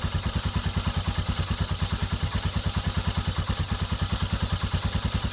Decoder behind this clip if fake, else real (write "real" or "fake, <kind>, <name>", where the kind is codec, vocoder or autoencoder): real